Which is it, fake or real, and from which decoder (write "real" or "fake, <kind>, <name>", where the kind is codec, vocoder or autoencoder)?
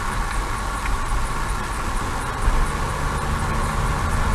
real